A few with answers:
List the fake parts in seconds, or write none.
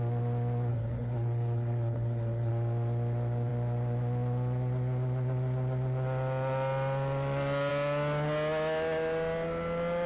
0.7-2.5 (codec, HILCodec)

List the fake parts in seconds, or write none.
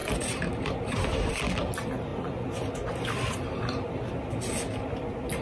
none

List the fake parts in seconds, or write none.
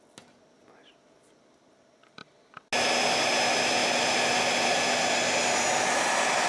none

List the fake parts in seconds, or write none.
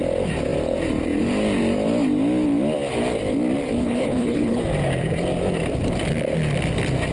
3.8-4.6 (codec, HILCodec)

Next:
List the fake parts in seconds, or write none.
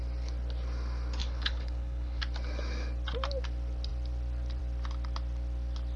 1.2-2.2 (codec, HILCodec)